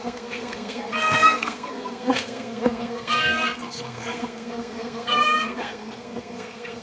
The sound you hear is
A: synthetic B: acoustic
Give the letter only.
A